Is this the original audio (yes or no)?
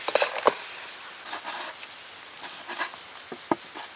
yes